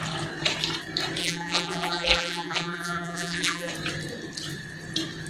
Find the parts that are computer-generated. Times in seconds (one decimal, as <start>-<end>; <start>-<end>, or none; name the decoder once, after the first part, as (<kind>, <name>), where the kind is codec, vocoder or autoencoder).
1.2-3.7 (vocoder, BigVGAN v2)